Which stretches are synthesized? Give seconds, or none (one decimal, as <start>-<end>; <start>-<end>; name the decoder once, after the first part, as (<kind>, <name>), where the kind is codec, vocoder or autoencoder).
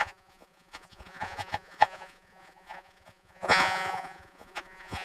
0.0-5.0 (vocoder, Vocos)